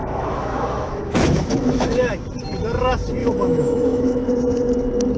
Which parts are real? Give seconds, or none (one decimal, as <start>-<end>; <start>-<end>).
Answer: 2.1-3.2; 4.3-5.2